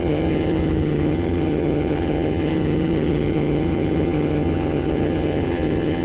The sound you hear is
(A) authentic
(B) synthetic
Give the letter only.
B